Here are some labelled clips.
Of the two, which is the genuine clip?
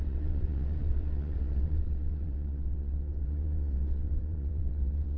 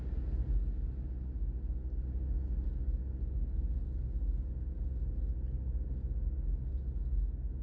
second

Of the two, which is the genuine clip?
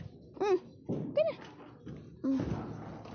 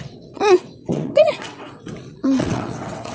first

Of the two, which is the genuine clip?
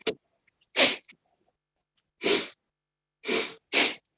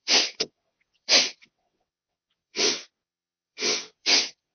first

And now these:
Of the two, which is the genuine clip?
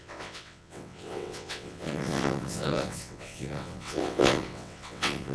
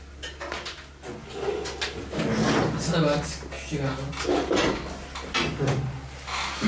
second